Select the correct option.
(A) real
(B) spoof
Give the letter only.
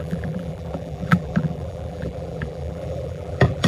B